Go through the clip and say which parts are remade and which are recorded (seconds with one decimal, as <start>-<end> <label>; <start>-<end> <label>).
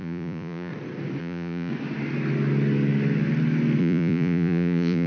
0.0-0.7 remade; 0.7-1.2 recorded; 1.2-1.7 remade; 1.7-3.8 recorded; 3.8-5.1 remade